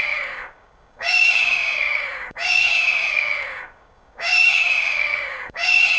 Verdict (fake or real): fake